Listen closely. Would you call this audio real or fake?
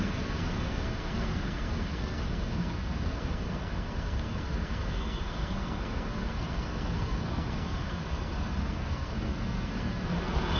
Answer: fake